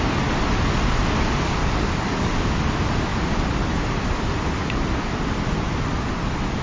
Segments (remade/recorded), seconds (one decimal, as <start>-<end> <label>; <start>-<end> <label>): 0.0-1.6 recorded; 1.6-2.3 remade; 2.3-6.6 recorded